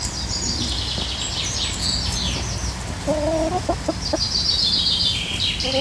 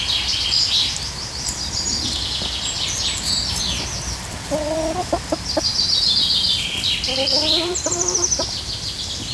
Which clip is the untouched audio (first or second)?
first